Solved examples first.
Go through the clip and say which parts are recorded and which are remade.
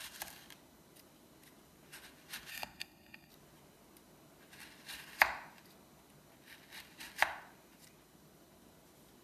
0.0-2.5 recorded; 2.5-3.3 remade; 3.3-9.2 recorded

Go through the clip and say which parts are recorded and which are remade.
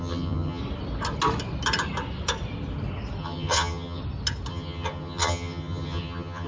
0.0-0.6 remade; 0.6-3.2 recorded; 3.2-4.0 remade; 4.0-4.5 recorded; 4.5-6.5 remade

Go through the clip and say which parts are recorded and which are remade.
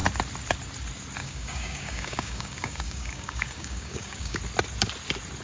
0.0-1.2 recorded; 1.2-4.4 remade; 4.4-5.4 recorded